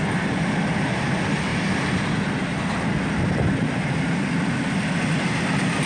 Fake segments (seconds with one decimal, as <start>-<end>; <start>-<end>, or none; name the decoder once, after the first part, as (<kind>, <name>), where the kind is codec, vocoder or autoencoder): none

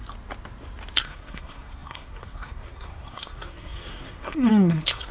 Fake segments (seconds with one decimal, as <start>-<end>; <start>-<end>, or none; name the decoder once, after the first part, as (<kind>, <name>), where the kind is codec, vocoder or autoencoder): 1.0-5.1 (codec, SNAC)

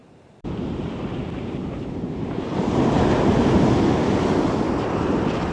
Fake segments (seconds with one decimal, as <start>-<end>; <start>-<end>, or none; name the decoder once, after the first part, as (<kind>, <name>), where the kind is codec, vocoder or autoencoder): 0.0-3.3 (vocoder, BigVGAN v2)

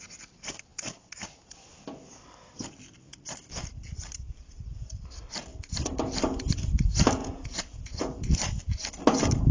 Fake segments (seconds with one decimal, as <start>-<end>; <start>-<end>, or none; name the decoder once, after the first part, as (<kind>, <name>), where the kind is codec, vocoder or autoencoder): 7.2-8.0 (vocoder, Vocos)

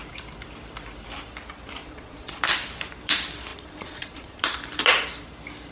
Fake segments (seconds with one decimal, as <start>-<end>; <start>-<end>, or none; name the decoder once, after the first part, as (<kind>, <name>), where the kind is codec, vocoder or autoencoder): 1.8-2.4 (vocoder, Vocos); 3.5-4.4

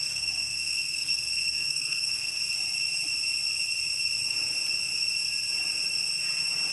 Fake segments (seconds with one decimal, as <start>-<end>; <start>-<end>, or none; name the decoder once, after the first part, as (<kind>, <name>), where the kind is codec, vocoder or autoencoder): 0.0-2.4 (codec, SNAC)